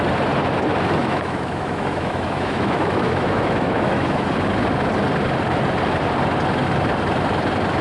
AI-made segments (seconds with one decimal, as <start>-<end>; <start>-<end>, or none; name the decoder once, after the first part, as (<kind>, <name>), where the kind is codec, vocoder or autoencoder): 1.0-4.3 (autoencoder, DAC-VAE)

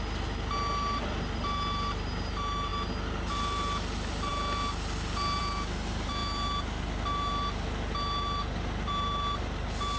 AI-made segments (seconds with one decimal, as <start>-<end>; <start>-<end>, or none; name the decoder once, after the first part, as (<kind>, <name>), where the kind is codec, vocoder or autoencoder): none

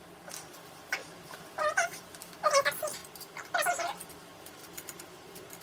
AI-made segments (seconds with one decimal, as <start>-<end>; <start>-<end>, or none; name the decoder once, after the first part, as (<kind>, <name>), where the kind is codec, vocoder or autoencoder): 1.0-2.0 (vocoder, BigVGAN v2); 3.0-3.5; 4.6-5.6

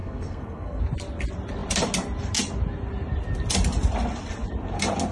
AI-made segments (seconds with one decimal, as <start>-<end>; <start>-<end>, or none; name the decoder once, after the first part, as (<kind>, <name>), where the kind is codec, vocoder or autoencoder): 0.0-0.8 (codec, SNAC)

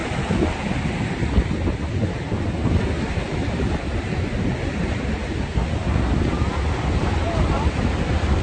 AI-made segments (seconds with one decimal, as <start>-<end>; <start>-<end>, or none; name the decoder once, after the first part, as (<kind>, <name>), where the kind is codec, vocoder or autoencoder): 3.3-5.4 (vocoder, BigVGAN v2)

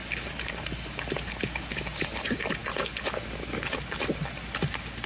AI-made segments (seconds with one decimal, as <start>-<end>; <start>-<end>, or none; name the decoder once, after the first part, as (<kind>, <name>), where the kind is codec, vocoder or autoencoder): none

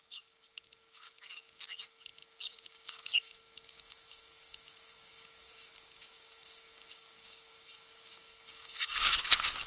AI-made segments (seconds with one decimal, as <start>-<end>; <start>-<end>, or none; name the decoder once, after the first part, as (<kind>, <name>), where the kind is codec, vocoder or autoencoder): 0.0-9.7 (codec, DAC)

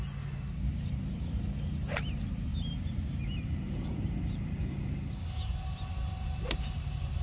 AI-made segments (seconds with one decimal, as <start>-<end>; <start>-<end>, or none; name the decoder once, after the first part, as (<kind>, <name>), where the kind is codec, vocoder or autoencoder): 2.5-5.4 (vocoder, BigVGAN v2)